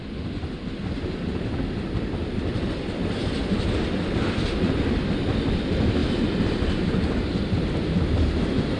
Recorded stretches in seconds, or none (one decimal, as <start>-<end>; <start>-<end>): 0.0-8.8